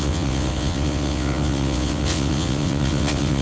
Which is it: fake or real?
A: fake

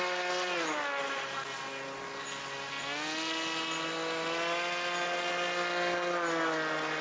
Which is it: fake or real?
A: real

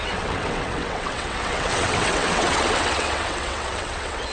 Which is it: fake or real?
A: fake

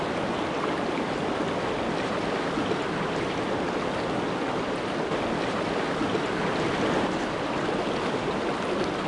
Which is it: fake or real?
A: real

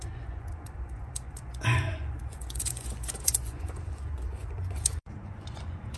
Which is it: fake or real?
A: fake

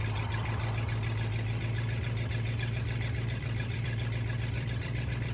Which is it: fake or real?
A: fake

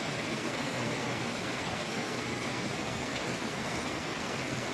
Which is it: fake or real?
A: fake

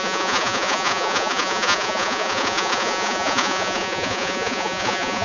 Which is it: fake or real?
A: fake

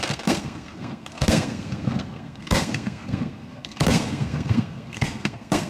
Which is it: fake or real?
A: fake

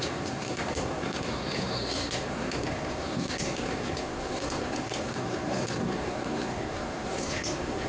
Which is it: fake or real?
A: fake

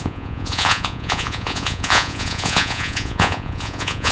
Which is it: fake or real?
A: fake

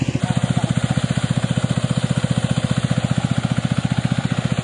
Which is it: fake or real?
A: real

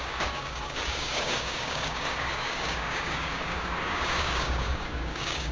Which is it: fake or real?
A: fake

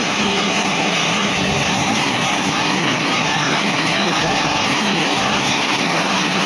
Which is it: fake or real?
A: fake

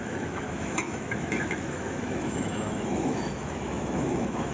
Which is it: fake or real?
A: fake